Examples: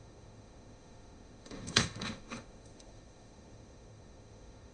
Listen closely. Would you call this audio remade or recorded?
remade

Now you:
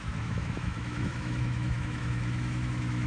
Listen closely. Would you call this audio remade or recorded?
remade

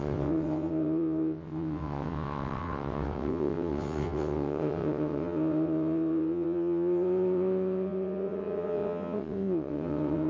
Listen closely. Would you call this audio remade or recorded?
remade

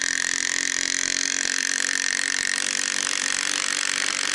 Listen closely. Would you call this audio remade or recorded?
remade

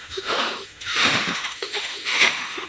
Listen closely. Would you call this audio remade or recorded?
remade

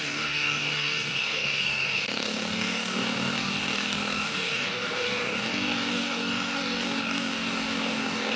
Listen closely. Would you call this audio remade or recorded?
remade